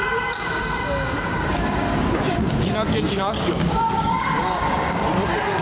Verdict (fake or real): fake